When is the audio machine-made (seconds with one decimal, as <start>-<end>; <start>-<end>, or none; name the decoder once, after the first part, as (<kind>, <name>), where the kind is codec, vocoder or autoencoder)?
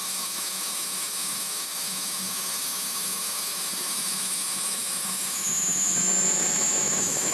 0.0-7.3 (autoencoder, DAC-VAE)